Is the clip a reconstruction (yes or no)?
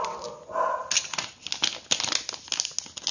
no